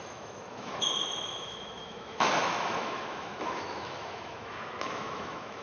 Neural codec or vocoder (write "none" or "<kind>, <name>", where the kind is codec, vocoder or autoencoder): autoencoder, DAC-VAE